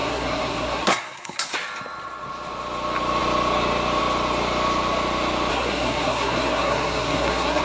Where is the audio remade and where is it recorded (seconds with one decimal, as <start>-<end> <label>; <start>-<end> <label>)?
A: 0.0-1.5 remade; 1.5-5.5 recorded; 5.5-7.6 remade